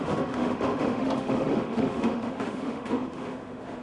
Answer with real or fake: fake